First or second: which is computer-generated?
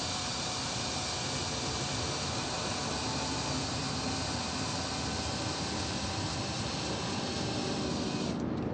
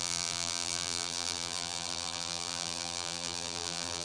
second